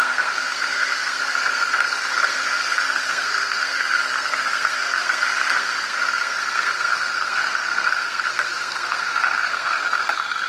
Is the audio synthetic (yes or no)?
yes